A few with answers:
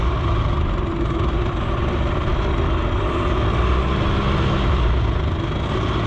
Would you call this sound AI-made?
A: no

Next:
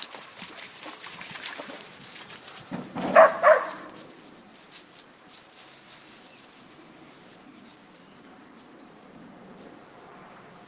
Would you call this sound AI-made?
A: yes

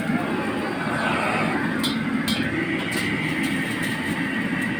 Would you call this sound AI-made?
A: no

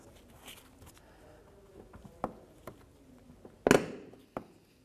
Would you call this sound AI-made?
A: no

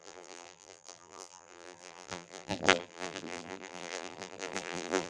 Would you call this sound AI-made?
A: yes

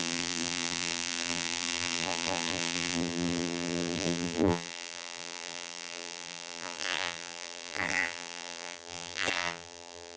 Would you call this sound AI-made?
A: yes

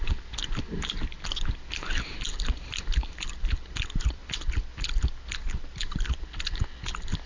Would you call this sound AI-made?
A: no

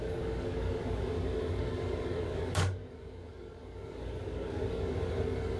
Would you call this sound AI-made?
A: yes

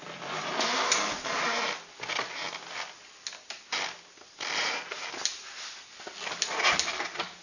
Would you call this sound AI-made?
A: no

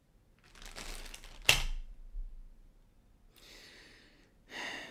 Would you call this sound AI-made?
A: no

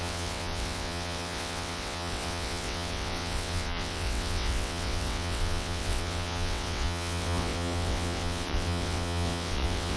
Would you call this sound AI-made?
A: yes